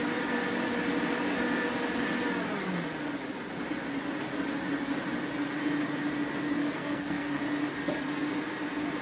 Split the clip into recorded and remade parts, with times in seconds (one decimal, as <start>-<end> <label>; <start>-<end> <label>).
0.0-6.6 recorded; 6.6-7.4 remade; 7.4-9.0 recorded